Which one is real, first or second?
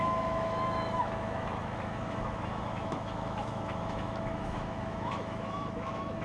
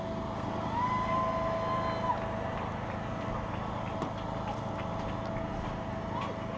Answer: second